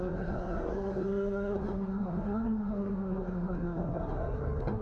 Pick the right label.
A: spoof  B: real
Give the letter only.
A